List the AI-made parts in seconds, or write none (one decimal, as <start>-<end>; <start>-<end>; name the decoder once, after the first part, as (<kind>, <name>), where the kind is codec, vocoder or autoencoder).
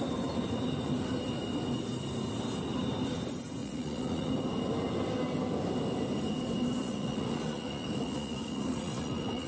3.6-4.3 (vocoder, Vocos); 6.8-9.5